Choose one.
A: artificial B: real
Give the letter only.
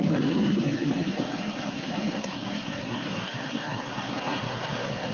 A